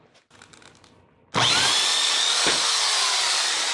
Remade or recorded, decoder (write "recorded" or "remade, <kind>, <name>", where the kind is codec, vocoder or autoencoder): recorded